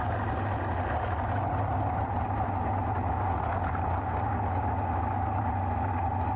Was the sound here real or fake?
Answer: real